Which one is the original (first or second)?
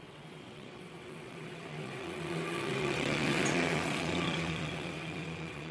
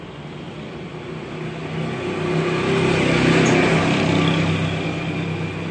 second